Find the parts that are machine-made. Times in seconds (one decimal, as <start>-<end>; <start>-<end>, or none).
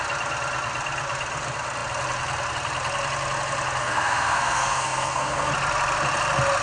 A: 3.8-5.5